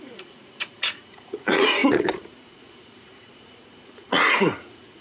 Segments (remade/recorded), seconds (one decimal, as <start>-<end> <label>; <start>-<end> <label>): 0.0-5.0 remade